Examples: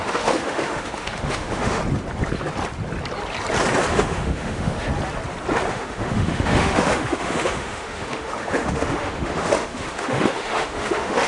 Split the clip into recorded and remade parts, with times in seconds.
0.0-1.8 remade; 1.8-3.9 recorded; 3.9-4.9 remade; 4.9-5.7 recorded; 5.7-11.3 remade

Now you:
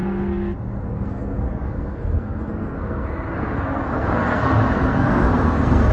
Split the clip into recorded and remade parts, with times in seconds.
0.0-5.9 remade

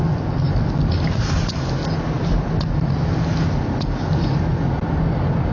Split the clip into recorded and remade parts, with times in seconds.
0.0-5.5 recorded